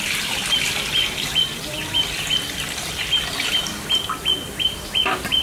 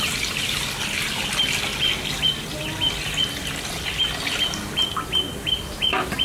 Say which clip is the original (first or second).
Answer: second